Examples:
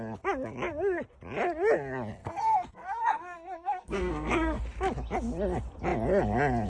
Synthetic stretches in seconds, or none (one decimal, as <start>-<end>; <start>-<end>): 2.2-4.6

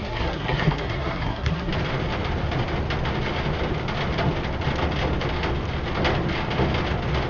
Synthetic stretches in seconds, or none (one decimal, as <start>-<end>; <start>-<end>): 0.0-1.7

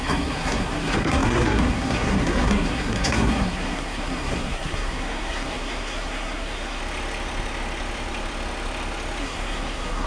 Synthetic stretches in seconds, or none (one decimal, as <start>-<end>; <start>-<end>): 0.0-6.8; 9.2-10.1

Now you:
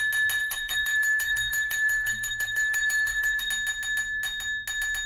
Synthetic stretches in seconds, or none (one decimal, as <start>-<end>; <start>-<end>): 0.4-3.5

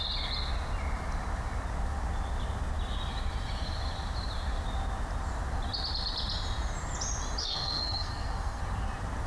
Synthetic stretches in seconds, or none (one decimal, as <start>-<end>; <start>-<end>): 7.4-8.6

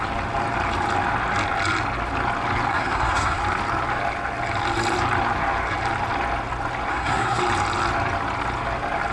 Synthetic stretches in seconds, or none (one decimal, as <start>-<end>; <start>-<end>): 2.7-3.4; 6.9-7.4